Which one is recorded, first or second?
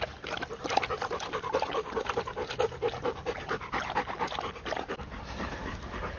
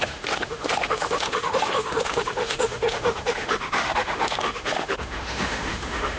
first